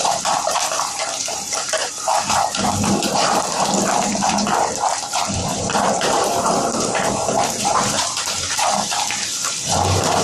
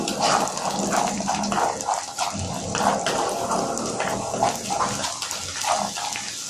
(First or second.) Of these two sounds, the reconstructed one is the first